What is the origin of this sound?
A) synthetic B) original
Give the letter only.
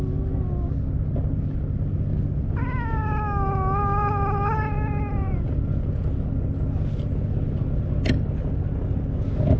B